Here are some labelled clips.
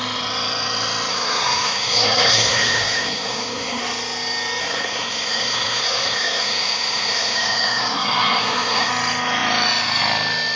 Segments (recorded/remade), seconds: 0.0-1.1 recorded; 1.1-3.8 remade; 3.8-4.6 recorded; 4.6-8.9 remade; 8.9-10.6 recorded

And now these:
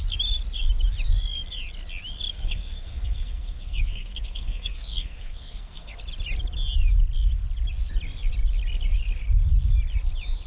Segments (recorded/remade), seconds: 0.0-2.3 recorded; 2.3-6.0 remade; 6.0-10.5 recorded

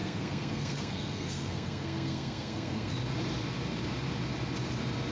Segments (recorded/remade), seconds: 0.0-2.9 remade; 2.9-5.1 recorded

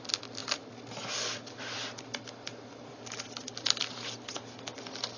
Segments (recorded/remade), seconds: 0.0-5.2 recorded